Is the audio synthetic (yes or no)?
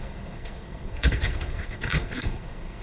yes